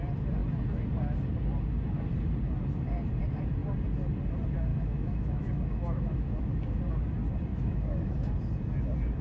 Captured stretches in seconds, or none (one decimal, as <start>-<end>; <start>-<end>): 0.0-4.7; 6.8-7.5; 8.3-9.2